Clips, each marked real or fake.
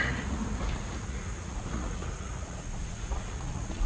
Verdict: fake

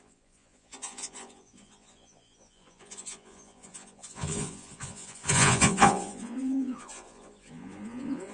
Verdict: fake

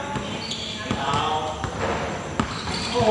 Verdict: real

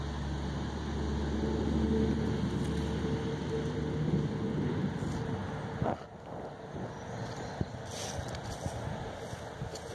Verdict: real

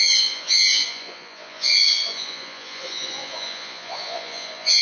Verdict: fake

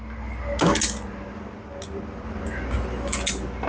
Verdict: real